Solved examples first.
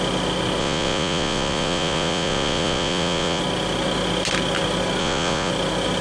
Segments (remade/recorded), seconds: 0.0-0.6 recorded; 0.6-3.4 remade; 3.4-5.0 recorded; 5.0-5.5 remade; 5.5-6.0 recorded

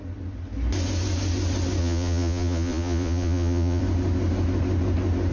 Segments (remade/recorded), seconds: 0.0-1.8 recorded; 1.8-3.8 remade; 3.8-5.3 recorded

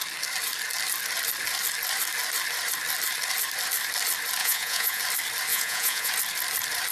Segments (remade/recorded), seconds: 0.0-4.4 recorded; 4.4-5.0 remade; 5.0-5.5 recorded; 5.5-6.1 remade; 6.1-6.9 recorded

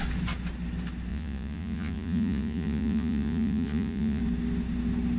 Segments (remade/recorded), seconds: 0.0-1.1 recorded; 1.1-4.2 remade; 4.2-5.2 recorded

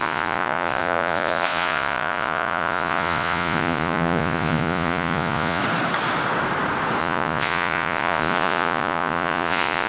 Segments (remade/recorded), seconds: 0.0-5.6 remade; 5.6-7.0 recorded; 7.0-9.9 remade

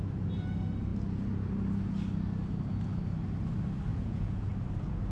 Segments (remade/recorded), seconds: 0.0-3.9 recorded; 3.9-4.5 remade; 4.5-5.1 recorded

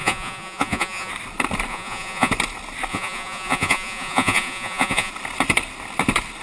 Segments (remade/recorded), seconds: 0.0-1.1 remade; 1.1-1.7 recorded; 1.7-2.3 remade; 2.3-2.9 recorded; 2.9-5.1 remade; 5.1-6.4 recorded